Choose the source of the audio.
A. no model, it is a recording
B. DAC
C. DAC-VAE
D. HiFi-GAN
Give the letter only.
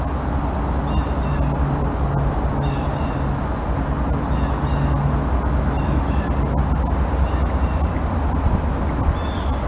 A